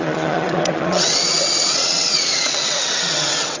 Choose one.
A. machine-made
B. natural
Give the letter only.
A